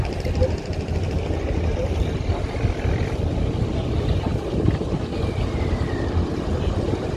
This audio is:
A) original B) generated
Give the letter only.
A